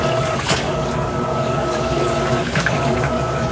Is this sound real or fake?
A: fake